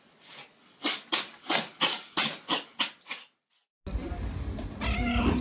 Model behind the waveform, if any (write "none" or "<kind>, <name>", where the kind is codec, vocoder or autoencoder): none